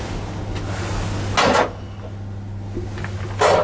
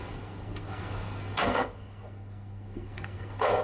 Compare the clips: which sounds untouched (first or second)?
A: first